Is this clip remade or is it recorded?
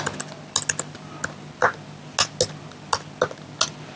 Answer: recorded